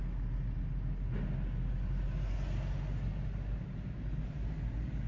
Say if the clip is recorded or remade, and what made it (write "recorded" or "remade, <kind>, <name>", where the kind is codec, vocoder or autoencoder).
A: recorded